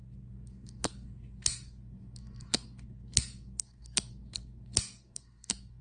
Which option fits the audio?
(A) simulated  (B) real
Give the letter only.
A